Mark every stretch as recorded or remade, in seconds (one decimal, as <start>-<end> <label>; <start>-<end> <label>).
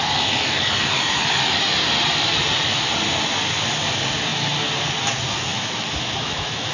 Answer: 0.0-5.5 recorded; 5.5-6.7 remade